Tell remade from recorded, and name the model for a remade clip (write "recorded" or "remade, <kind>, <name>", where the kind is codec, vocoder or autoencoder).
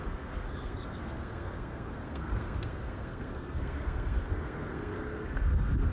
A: remade, codec, SNAC